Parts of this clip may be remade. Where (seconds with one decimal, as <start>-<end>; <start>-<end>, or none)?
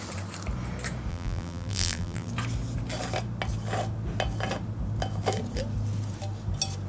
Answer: 1.1-2.3